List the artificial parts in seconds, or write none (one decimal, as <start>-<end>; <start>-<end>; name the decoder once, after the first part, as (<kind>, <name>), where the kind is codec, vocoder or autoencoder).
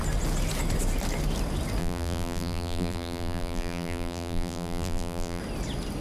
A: 1.8-5.4 (vocoder, BigVGAN v2)